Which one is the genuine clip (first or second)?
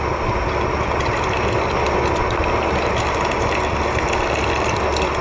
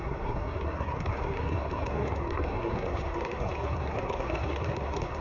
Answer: first